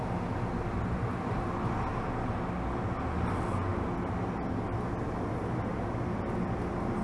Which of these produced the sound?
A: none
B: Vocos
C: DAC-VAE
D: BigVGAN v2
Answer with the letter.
A